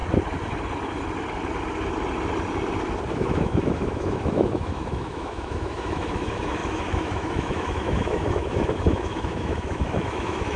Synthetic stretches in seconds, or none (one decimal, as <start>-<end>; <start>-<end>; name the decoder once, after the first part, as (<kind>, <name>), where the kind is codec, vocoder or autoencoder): 3.1-10.6 (autoencoder, DAC-VAE)